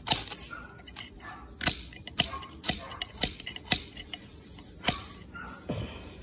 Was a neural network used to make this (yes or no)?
no